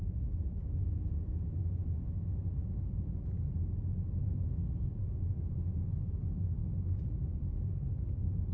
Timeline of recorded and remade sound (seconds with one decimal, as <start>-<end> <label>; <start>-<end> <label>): 0.0-8.5 recorded